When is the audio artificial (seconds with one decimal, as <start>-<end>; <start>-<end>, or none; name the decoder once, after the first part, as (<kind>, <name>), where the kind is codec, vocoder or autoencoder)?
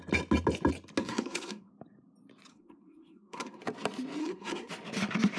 1.0-1.7 (codec, SNAC); 2.5-3.6; 4.2-4.7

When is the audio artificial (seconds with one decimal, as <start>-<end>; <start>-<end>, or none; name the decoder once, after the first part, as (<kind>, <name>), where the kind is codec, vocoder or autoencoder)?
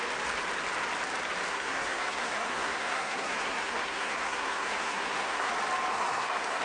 1.5-5.5 (codec, SNAC); 5.9-6.6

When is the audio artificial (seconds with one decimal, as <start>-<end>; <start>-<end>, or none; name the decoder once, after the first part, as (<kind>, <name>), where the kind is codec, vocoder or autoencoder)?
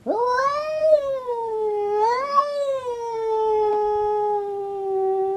0.8-3.7 (codec, SNAC)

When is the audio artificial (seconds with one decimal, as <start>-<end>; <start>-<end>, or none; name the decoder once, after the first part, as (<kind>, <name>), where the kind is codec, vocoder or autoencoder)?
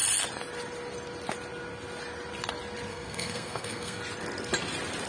2.9-4.0 (codec, SNAC)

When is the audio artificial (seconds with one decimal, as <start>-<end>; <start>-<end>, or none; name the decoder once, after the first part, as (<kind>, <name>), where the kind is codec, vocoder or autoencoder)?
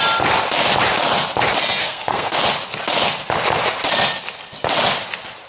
1.8-2.4 (codec, SNAC)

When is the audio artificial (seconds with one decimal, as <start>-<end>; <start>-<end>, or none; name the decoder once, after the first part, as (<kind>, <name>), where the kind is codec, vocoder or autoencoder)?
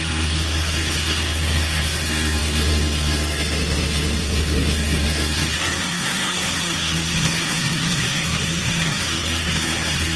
0.0-10.2 (codec, SNAC)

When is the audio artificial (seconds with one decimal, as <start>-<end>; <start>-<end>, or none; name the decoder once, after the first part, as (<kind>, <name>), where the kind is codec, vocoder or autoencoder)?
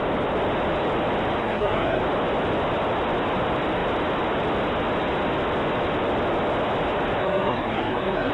1.4-2.0 (codec, SNAC); 7.2-8.3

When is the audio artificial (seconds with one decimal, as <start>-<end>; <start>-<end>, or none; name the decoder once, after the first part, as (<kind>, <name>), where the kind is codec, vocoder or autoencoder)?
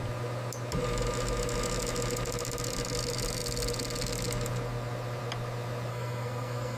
5.9-6.8 (codec, SNAC)